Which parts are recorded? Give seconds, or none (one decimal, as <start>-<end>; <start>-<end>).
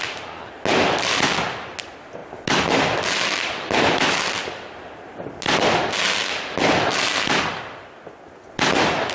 0.0-9.1